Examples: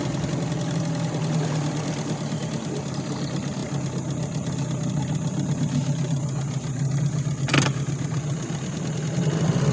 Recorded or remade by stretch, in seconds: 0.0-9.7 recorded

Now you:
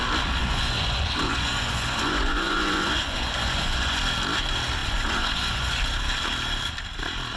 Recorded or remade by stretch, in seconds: 0.0-0.4 recorded; 0.4-4.0 remade; 4.0-4.8 recorded; 4.8-5.8 remade; 5.8-7.4 recorded

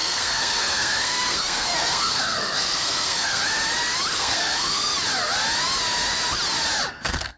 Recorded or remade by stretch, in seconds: 0.0-3.4 remade; 3.4-4.1 recorded; 4.1-4.9 remade; 4.9-6.9 recorded; 6.9-7.4 remade

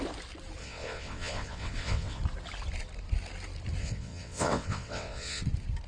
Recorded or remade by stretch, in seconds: 0.0-0.6 recorded; 0.6-2.2 remade; 2.2-3.8 recorded; 3.8-5.4 remade; 5.4-5.9 recorded

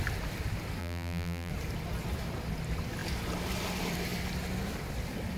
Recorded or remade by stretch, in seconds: 0.0-0.8 recorded; 0.8-1.5 remade; 1.5-5.4 recorded

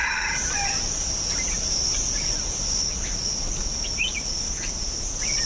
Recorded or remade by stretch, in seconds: 0.0-2.6 remade; 2.6-5.5 recorded